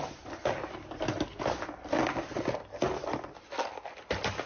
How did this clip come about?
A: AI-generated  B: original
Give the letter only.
B